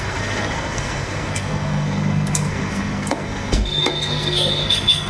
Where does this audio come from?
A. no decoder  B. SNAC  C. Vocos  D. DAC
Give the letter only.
B